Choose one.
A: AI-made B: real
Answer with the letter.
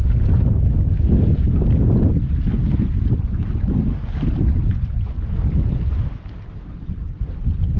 B